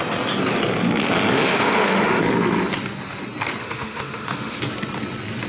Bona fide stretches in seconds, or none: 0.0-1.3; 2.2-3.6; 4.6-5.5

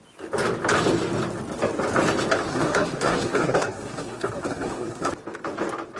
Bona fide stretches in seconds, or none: 0.0-2.5; 5.1-6.0

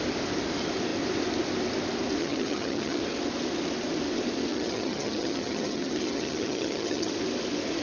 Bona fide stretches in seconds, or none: 0.0-2.2; 3.0-4.5; 7.1-7.8

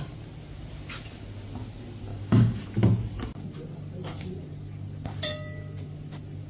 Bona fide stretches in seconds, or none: 0.0-2.1; 2.6-6.5

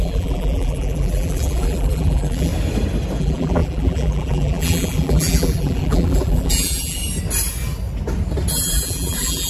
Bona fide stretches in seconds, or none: 2.5-3.2; 7.0-8.5